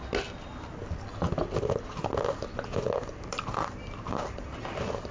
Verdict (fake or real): real